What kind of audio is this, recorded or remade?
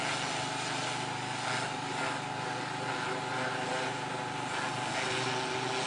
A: recorded